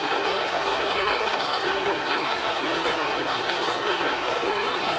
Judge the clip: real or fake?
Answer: fake